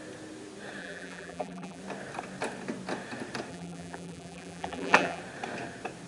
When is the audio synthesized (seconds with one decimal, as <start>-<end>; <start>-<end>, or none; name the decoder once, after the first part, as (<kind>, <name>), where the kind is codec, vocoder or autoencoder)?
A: 0.8-1.8 (vocoder, BigVGAN v2); 3.5-5.2